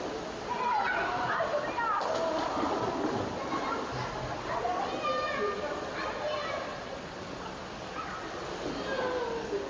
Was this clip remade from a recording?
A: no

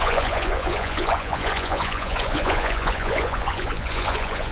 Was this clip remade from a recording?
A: yes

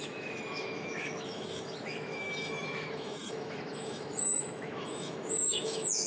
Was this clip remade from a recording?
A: yes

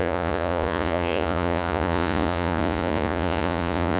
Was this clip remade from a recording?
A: yes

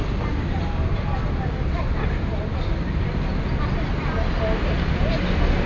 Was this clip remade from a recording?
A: no